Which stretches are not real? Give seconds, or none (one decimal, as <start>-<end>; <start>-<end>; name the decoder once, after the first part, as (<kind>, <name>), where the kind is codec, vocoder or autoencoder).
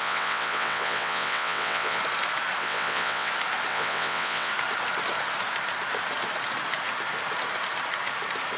0.0-2.0 (vocoder, WaveNeXt); 2.6-3.3; 3.7-4.5